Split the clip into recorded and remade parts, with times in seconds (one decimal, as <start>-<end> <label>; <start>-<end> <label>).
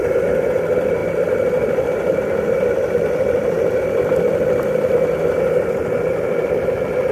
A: 0.0-7.1 recorded